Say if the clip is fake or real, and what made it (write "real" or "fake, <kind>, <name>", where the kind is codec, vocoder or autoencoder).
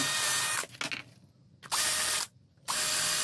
real